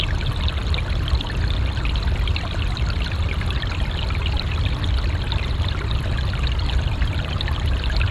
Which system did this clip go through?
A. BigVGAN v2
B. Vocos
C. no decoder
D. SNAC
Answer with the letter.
C